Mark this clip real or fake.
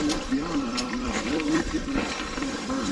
fake